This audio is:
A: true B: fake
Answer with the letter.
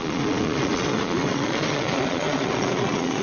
B